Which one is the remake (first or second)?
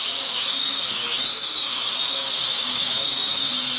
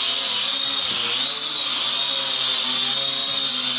first